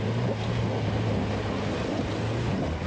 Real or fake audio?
real